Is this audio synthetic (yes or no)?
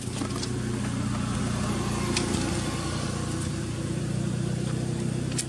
no